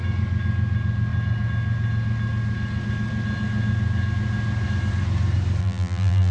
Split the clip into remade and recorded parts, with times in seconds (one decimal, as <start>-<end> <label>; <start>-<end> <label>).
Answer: 0.0-5.6 recorded; 5.6-6.3 remade